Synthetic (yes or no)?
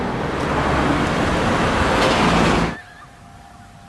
yes